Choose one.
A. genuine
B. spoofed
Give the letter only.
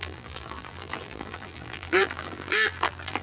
B